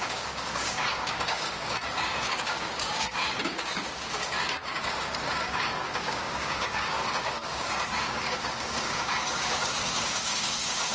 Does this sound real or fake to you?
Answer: fake